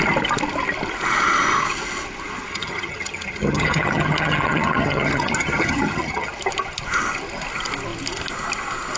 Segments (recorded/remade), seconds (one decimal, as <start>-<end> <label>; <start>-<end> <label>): 0.0-2.5 recorded; 2.5-6.3 remade; 6.3-9.0 recorded